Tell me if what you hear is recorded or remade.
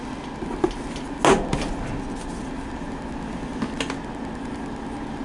recorded